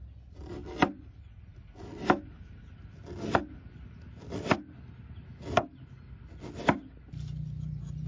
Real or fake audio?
real